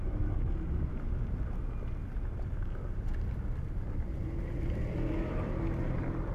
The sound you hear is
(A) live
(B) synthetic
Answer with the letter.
A